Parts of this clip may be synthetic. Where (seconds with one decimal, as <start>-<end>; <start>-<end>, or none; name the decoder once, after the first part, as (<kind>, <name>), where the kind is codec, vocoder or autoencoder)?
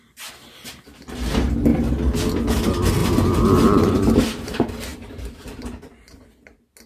3.0-3.9 (vocoder, BigVGAN v2); 4.9-6.5